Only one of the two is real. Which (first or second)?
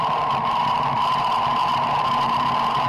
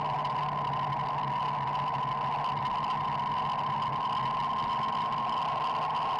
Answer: second